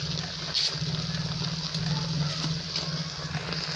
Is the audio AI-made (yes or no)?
no